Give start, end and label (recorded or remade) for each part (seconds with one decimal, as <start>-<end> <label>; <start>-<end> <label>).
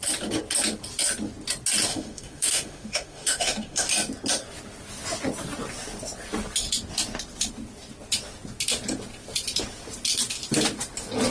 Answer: 0.0-1.9 recorded; 1.9-3.9 remade; 3.9-11.3 recorded